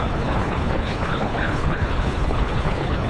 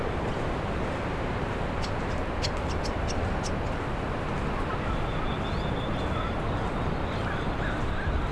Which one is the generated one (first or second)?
first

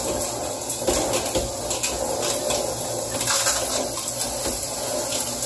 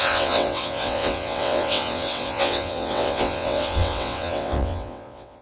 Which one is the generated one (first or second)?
second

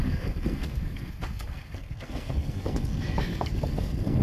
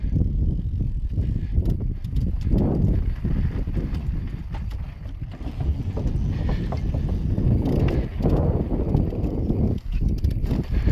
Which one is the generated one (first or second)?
first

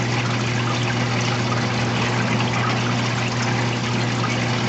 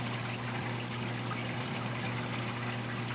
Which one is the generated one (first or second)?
second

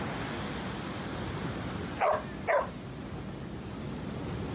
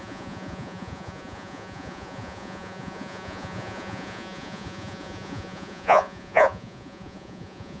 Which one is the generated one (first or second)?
second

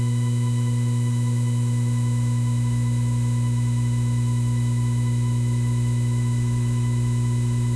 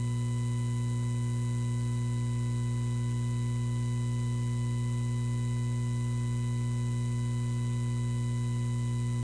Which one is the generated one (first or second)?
first